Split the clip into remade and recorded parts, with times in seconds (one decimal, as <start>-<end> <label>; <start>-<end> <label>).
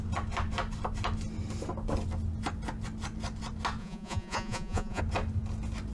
0.0-3.8 recorded; 3.8-5.0 remade; 5.0-5.9 recorded